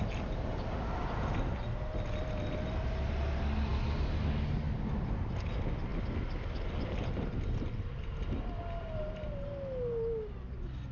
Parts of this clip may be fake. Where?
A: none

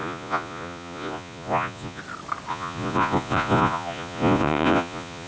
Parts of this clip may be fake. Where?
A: 0.0-2.0 (vocoder, Vocos); 2.5-5.3

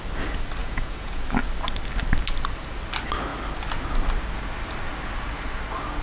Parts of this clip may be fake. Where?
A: 0.6-1.2 (vocoder, Vocos)

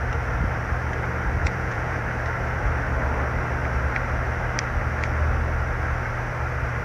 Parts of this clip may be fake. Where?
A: 1.4-2.0 (vocoder, Vocos)

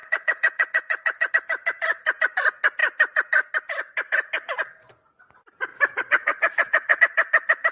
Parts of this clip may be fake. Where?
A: 0.0-1.3 (vocoder, Vocos); 5.7-7.0

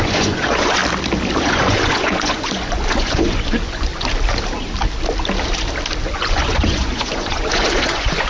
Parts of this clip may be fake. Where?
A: 0.0-0.8 (vocoder, Vocos); 1.4-3.9; 6.0-8.3